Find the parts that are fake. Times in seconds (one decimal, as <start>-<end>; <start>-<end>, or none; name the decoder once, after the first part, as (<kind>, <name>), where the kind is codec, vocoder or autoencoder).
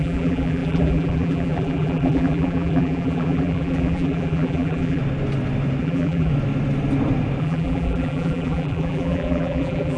0.0-5.0 (vocoder, BigVGAN v2); 5.8-6.3; 7.4-10.0